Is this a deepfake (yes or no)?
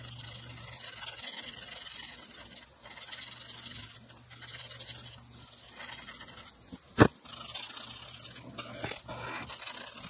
no